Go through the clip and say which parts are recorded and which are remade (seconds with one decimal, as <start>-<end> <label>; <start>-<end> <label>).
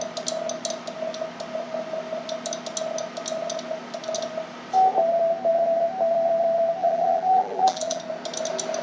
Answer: 0.0-6.8 recorded; 6.8-8.0 remade; 8.0-8.8 recorded